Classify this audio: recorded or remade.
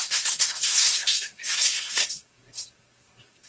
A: remade